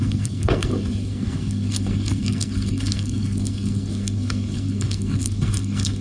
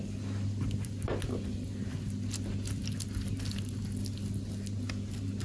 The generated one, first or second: first